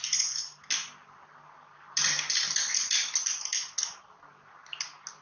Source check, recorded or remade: recorded